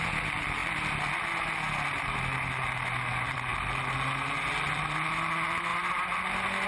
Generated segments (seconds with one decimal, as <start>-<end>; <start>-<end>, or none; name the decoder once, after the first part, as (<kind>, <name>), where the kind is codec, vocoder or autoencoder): none

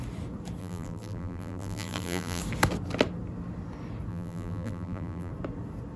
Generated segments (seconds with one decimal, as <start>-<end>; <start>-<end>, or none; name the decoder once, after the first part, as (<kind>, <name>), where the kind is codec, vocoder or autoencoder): 0.6-2.4 (vocoder, BigVGAN v2); 4.1-5.3

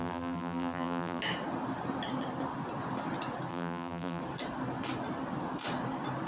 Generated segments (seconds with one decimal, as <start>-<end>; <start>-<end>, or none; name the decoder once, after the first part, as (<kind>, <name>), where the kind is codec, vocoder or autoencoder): 0.0-1.2 (vocoder, BigVGAN v2); 3.5-4.2

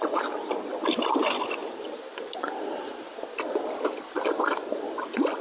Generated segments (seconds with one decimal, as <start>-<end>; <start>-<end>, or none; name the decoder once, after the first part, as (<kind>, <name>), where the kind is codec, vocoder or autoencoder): 1.6-4.4 (vocoder, BigVGAN v2)

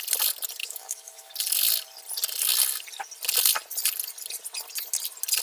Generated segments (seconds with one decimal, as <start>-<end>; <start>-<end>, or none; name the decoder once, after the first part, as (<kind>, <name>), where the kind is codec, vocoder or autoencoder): 0.6-1.3 (autoencoder, DAC-VAE)

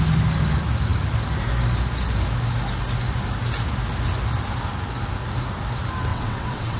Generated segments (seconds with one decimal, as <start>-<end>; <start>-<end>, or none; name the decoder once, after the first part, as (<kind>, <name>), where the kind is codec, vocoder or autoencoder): 6.1-6.8 (vocoder, WaveNeXt)